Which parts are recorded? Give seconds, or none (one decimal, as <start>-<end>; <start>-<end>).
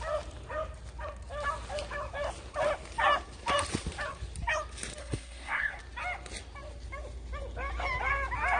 0.0-5.0; 5.8-8.6